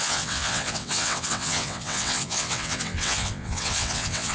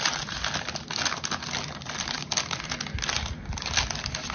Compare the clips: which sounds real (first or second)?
second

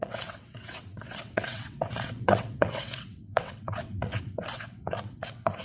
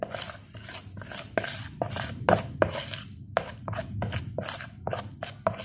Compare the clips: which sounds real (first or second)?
second